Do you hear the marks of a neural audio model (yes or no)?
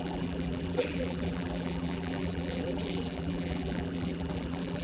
yes